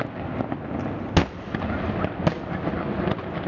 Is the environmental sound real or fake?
real